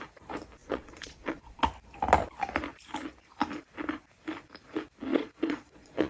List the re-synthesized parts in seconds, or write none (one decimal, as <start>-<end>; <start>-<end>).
0.6-1.6; 5.1-6.1